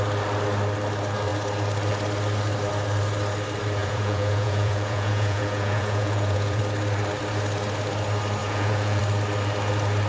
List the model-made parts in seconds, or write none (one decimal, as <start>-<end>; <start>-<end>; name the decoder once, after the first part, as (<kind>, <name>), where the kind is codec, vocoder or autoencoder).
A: 3.8-6.6 (vocoder, Vocos); 8.4-9.0